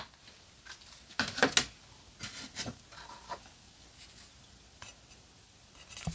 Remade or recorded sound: recorded